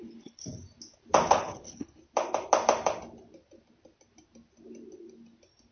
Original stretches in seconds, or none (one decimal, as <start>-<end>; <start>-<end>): 0.4-1.3; 2.0-5.7